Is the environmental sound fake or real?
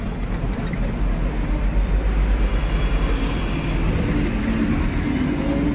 real